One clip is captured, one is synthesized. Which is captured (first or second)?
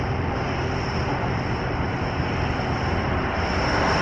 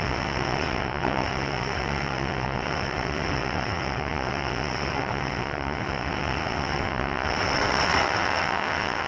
first